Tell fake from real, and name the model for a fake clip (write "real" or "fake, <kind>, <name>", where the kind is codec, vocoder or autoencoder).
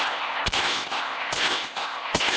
fake, codec, ZipCodec